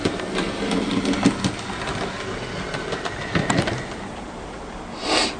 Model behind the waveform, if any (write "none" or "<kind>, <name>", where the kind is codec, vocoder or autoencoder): none